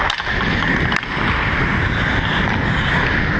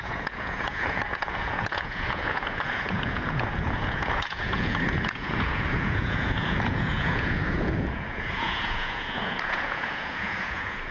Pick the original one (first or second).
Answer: first